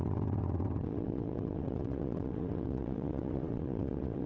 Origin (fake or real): fake